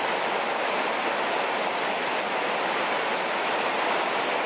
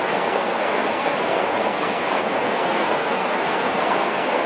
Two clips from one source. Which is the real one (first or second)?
first